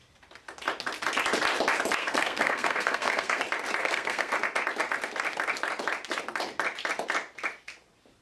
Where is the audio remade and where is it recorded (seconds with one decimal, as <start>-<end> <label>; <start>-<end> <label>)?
0.0-2.0 recorded; 2.0-3.4 remade; 3.4-3.8 recorded; 3.8-4.3 remade; 4.3-8.2 recorded